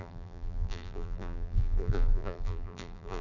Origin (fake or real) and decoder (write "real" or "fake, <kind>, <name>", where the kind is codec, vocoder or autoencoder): fake, vocoder, BigVGAN v2